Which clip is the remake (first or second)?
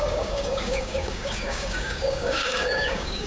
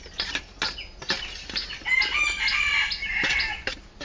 first